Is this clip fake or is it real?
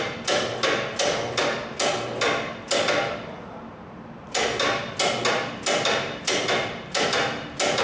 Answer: real